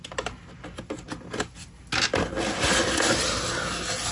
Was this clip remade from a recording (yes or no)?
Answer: no